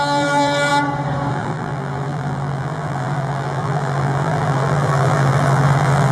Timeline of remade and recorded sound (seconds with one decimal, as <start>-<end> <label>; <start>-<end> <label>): 0.0-0.7 remade; 0.7-1.3 recorded; 1.3-6.1 remade